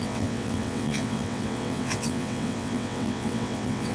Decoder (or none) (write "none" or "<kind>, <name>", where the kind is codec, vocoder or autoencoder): vocoder, WaveNeXt